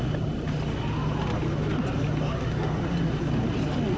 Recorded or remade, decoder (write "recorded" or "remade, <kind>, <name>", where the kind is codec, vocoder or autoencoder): recorded